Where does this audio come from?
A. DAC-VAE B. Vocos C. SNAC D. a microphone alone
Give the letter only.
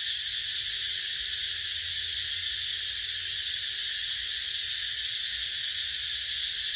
D